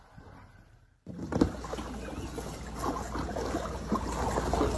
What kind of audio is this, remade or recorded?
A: recorded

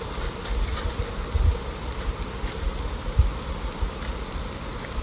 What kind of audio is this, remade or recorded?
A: recorded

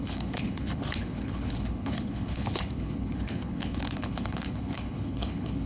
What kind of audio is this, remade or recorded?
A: remade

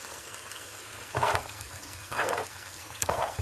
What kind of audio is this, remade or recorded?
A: remade